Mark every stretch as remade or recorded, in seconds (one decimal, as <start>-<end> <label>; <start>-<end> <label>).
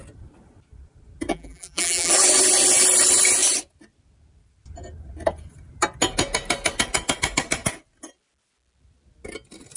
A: 0.0-1.3 recorded; 1.3-2.1 remade; 2.1-9.8 recorded